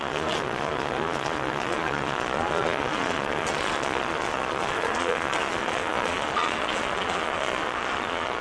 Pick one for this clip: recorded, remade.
remade